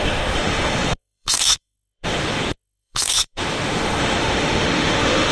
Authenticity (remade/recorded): remade